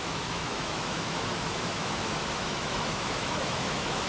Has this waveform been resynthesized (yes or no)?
yes